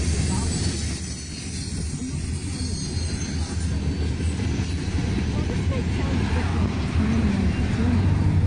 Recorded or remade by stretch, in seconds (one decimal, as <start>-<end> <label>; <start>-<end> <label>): 0.0-8.5 recorded